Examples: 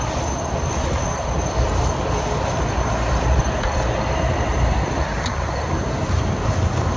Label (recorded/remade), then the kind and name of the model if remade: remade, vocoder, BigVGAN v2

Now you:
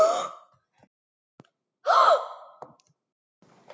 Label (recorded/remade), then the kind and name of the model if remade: recorded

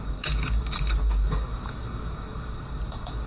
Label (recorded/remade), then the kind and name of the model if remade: remade, codec, DAC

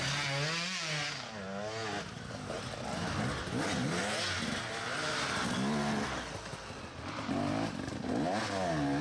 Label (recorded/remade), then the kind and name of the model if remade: recorded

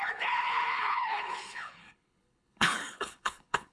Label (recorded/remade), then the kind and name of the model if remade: remade, codec, HILCodec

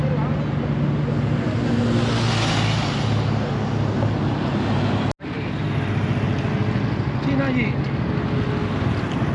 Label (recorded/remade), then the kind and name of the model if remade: recorded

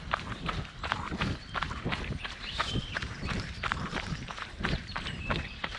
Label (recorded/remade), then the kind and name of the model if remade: remade, vocoder, BigVGAN v2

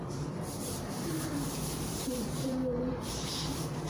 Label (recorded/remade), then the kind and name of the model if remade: remade, vocoder, BigVGAN v2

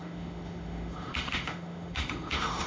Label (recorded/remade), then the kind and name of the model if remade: remade, autoencoder, DAC-VAE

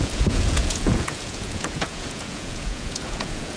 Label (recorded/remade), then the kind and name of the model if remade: remade, vocoder, Vocos